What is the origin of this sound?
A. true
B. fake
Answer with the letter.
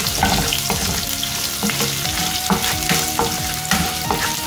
A